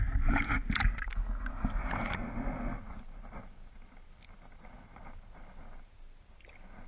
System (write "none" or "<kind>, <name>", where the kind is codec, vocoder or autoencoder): none